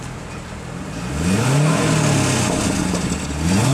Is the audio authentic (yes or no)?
yes